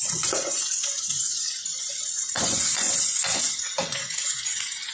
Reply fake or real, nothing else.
fake